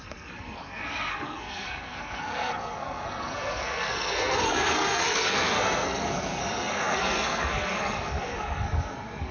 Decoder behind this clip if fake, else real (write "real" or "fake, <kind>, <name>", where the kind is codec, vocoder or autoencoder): fake, codec, SNAC